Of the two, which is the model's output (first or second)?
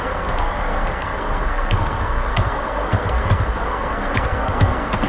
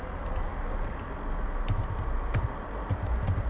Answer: first